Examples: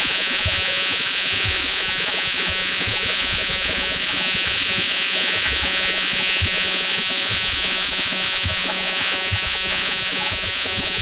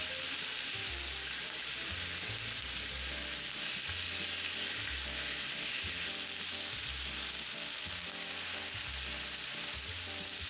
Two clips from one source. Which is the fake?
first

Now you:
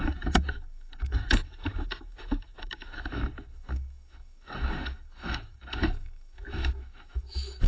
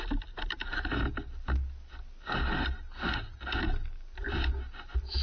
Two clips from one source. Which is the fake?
first